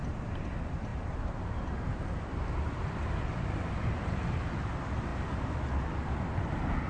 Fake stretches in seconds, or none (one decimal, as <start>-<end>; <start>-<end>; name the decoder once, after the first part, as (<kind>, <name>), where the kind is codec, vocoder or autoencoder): 0.9-4.5 (vocoder, BigVGAN v2)